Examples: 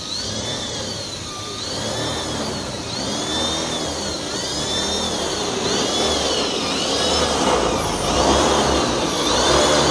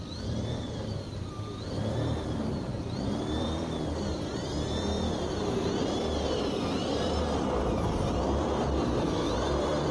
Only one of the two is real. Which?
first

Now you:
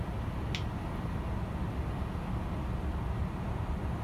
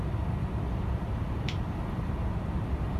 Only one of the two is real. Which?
first